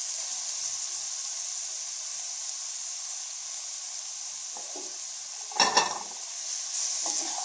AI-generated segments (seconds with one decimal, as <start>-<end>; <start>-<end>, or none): none